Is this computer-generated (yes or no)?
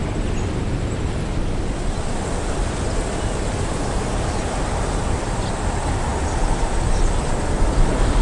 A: no